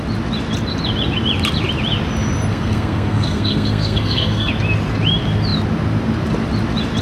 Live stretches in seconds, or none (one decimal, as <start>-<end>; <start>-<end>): 0.0-2.5; 4.5-7.0